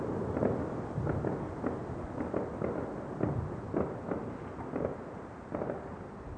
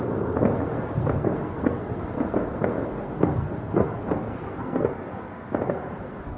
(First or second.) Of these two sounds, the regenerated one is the second